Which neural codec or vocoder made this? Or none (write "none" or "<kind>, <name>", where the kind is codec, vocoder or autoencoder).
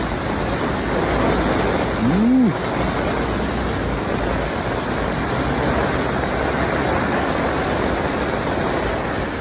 none